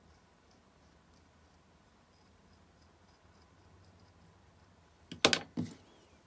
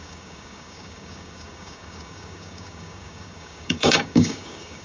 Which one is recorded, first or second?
first